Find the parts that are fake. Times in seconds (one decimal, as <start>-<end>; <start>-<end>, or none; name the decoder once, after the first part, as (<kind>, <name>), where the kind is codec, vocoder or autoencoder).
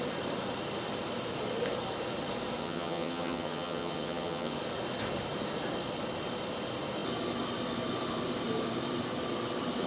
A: 2.6-4.6 (vocoder, HiFi-GAN)